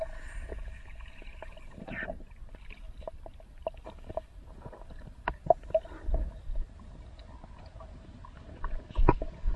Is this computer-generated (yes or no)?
no